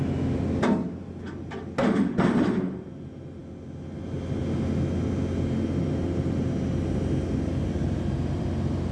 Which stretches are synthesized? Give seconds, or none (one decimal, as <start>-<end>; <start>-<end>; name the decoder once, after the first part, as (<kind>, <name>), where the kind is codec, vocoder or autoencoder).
none